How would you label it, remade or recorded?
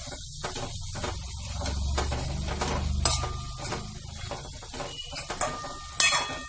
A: recorded